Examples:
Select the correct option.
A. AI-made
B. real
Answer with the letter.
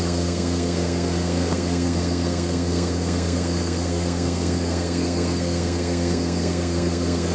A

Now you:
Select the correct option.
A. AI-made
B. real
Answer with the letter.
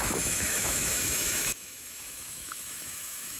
A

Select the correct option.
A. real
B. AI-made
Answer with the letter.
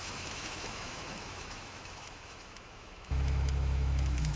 B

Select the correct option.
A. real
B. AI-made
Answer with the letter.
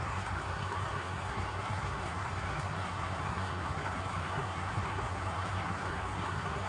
B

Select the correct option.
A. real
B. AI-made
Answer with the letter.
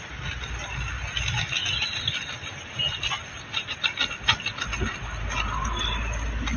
A